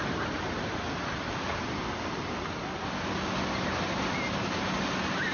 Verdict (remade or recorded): recorded